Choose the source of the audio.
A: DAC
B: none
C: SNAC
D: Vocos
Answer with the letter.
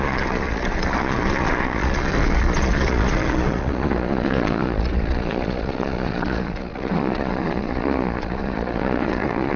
D